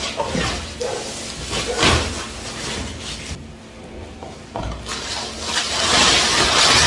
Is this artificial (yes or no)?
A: no